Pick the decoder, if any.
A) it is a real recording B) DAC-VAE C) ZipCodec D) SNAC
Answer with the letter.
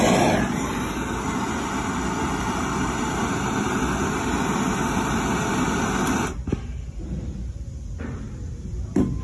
A